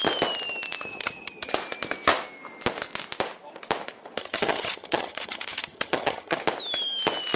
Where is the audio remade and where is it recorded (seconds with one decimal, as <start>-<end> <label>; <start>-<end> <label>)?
0.0-0.9 recorded; 0.9-1.5 remade; 1.5-4.2 recorded; 4.2-6.4 remade; 6.4-7.4 recorded